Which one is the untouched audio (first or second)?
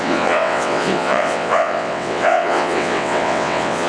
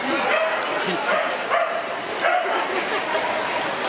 second